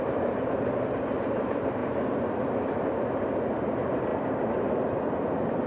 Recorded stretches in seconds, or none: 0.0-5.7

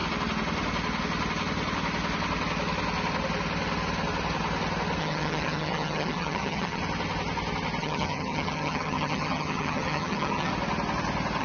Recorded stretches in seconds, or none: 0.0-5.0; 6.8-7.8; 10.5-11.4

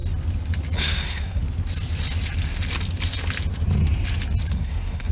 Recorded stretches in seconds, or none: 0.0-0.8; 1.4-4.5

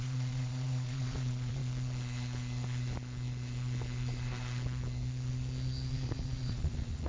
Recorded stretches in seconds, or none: 1.6-5.9